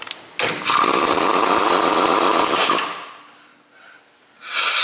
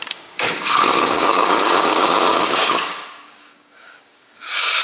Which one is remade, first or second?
second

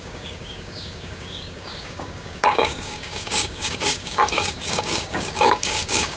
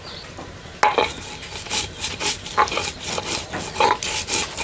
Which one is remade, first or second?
first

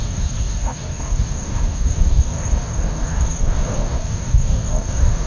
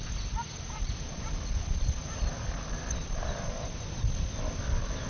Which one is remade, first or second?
first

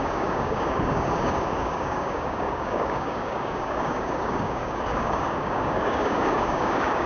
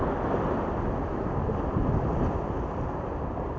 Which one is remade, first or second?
first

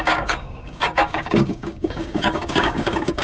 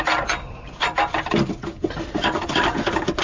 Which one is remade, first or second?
first